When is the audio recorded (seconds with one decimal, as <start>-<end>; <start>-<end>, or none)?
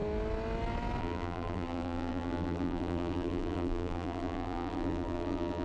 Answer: 0.0-1.0